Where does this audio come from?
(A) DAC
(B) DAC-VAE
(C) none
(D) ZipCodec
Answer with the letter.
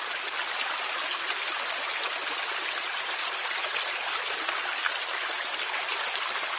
C